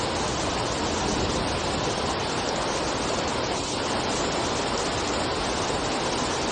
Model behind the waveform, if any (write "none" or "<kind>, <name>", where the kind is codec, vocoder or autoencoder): none